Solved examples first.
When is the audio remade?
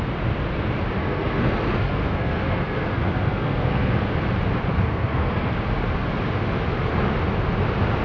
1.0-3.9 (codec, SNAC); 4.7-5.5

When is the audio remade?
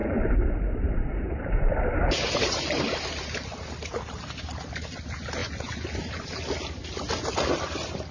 0.0-2.8 (vocoder, BigVGAN v2)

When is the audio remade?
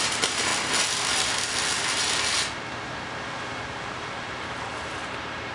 0.0-0.5 (vocoder, BigVGAN v2); 3.8-5.5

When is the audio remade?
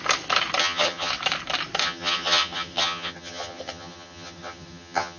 0.6-1.1 (vocoder, HiFi-GAN); 1.8-5.2